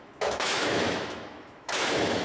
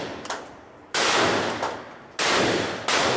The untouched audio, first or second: second